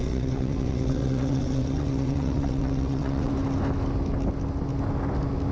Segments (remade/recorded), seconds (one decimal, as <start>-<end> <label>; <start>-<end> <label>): 0.0-3.3 remade; 3.3-5.5 recorded